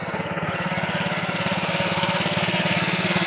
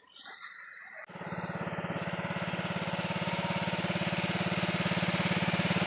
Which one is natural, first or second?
second